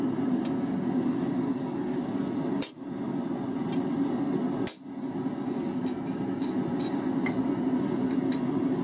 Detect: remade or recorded recorded